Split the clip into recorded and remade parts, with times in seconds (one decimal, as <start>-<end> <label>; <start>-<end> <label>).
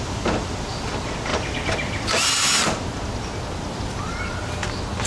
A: 0.0-5.1 recorded